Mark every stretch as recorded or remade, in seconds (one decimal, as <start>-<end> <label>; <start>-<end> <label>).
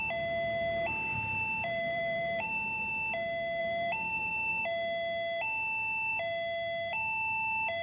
0.0-1.1 recorded; 1.1-2.9 remade; 2.9-3.6 recorded; 3.6-4.6 remade; 4.6-7.8 recorded